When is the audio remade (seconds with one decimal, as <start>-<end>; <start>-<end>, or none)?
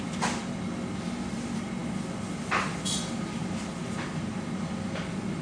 none